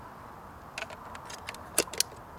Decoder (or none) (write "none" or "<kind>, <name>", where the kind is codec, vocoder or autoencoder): none